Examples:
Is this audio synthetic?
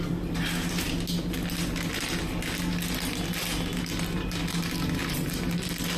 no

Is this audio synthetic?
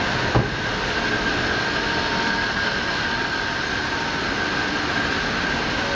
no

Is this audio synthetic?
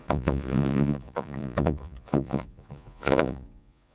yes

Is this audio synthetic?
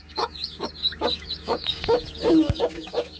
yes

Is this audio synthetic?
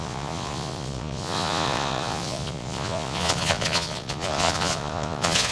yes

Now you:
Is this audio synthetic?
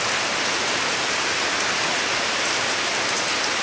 no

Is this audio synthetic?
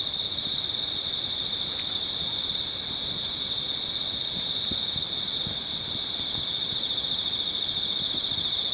no